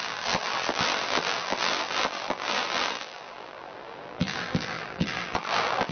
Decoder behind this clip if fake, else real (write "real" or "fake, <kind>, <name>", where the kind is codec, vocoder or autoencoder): fake, vocoder, BigVGAN v2